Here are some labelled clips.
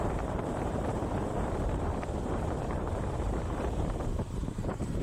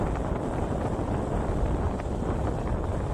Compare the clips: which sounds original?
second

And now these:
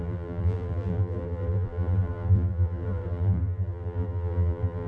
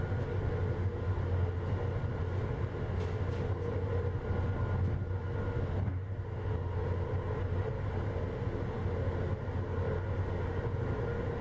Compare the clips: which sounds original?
second